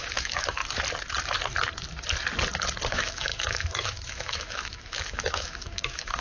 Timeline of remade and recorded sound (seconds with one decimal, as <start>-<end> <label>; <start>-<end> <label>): 0.0-0.6 remade; 0.6-2.9 recorded; 2.9-6.2 remade